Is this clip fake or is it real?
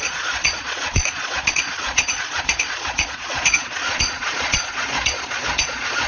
fake